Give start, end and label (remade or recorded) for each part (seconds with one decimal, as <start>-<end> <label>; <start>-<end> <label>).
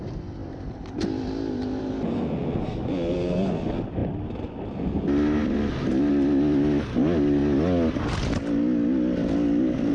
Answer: 0.0-9.9 recorded